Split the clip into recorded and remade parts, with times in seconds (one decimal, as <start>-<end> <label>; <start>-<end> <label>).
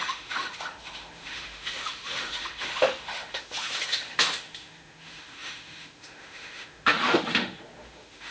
0.0-8.3 remade